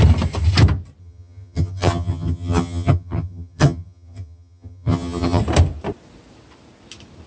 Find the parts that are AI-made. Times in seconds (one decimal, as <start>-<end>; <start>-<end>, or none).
1.0-5.4